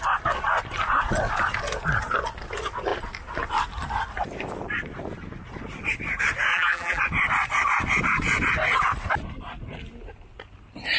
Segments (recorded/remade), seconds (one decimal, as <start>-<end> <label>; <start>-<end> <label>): 0.0-6.5 recorded; 6.5-7.0 remade; 7.0-11.0 recorded